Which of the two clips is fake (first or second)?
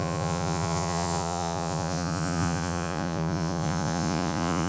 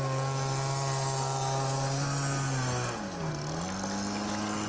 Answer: first